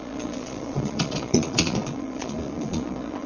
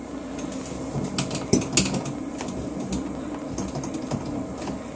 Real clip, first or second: second